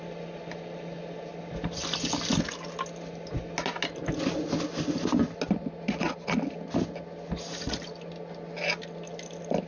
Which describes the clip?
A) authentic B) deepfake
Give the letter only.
A